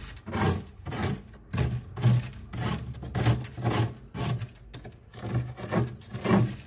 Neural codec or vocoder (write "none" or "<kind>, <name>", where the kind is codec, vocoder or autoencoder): none